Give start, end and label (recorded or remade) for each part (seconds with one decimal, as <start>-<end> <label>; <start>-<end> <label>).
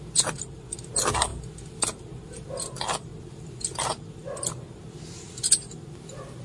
0.0-6.4 recorded